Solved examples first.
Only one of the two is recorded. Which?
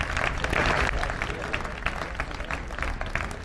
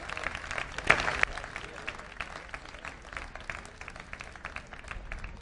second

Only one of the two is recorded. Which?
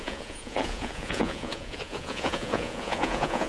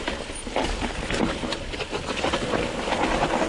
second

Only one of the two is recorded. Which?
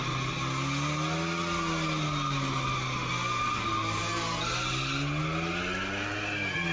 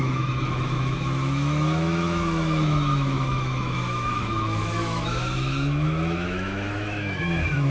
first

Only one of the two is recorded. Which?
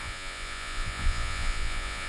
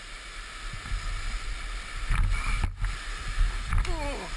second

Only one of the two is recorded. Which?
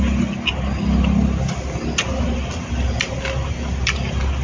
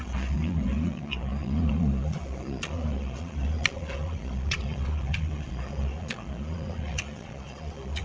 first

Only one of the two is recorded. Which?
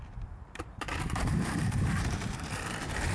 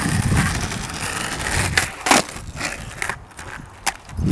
second